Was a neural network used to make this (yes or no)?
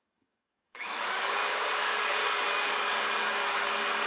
yes